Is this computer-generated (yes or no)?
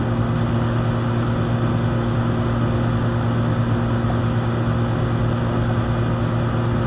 no